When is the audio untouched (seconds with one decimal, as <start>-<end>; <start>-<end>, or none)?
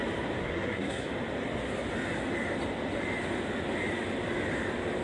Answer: 0.0-0.4; 1.1-5.0